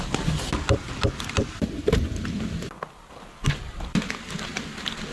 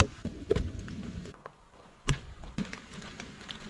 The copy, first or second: second